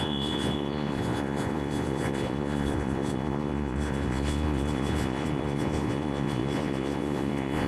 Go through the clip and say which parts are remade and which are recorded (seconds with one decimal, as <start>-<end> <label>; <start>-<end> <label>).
0.0-7.7 remade